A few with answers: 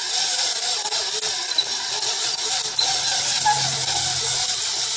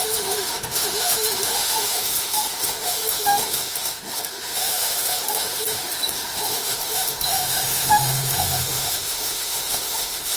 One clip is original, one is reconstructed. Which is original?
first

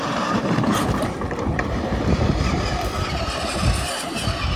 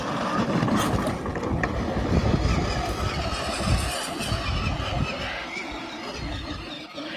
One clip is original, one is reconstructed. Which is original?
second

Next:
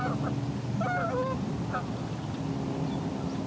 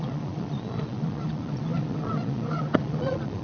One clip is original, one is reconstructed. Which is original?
first